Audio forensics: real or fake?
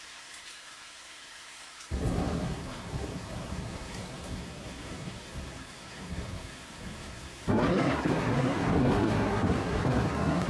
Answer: fake